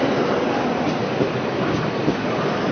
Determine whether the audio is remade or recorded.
recorded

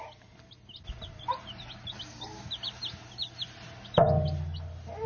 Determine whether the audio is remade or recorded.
recorded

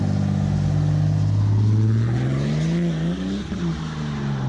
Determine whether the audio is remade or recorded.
recorded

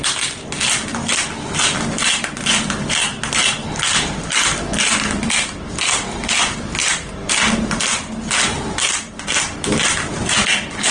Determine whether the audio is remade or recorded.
recorded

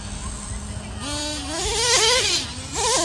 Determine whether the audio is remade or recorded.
recorded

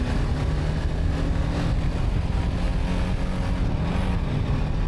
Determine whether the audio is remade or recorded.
recorded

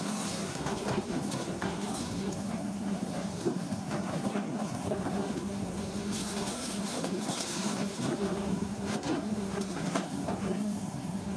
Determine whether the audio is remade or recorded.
remade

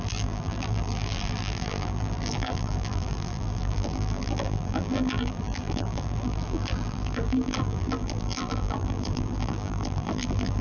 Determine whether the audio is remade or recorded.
remade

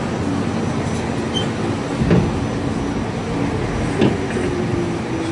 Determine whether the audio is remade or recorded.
recorded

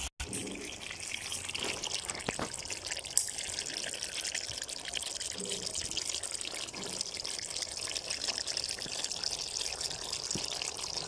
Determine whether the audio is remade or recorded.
recorded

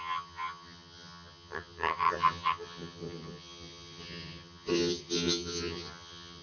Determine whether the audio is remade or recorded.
remade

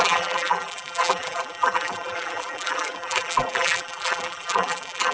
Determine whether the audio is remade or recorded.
remade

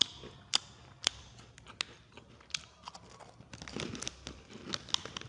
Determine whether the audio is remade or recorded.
recorded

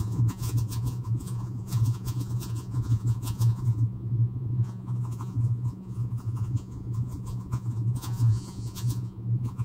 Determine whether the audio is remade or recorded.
remade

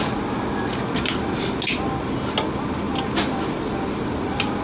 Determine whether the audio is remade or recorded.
recorded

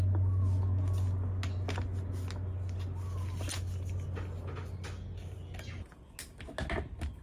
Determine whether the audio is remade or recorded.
recorded